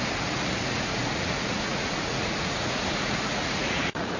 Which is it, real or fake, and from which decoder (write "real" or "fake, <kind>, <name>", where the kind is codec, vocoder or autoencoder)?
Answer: fake, vocoder, Vocos